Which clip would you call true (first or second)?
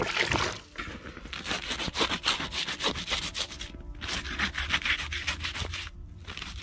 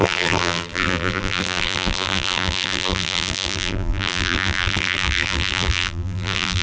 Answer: first